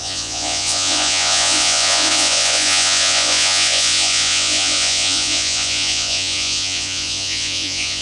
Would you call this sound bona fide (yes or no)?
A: no